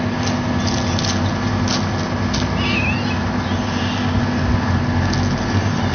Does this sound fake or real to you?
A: real